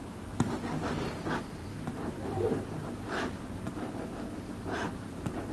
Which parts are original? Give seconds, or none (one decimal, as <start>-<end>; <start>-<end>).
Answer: 0.0-5.5